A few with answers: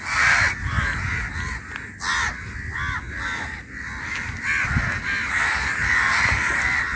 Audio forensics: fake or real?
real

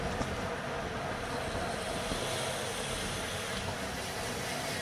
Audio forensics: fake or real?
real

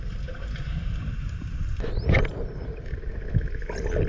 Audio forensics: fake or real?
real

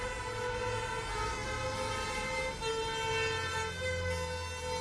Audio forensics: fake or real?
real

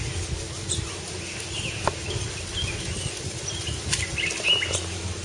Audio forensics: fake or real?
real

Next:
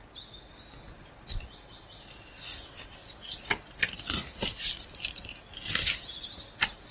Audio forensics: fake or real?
real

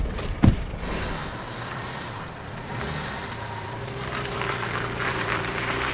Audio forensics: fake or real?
fake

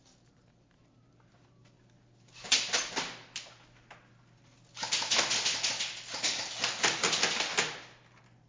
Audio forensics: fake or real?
real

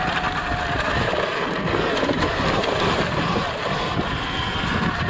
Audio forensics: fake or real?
real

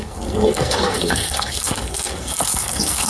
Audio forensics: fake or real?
fake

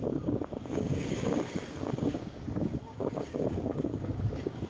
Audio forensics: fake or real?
fake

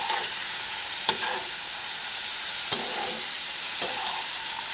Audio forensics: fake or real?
fake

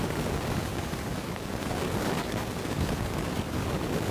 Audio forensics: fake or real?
fake